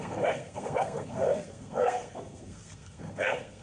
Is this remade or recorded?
remade